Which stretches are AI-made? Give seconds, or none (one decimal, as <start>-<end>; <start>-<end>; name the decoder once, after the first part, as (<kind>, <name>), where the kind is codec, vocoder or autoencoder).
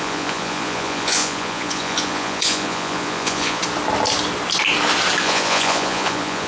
0.0-3.6 (vocoder, Vocos); 5.2-6.5